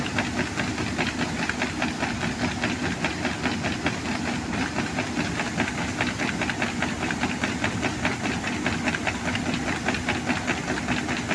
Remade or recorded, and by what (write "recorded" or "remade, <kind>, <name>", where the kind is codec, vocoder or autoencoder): recorded